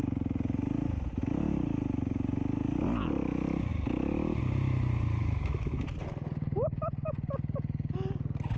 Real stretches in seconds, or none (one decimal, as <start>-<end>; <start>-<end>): 0.0-5.2; 5.8-8.6